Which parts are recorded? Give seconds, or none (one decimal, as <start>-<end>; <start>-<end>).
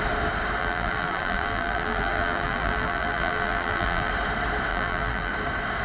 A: 0.0-0.6; 4.1-4.7; 5.3-5.8